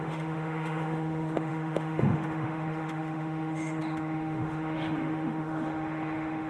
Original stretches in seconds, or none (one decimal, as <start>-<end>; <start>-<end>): none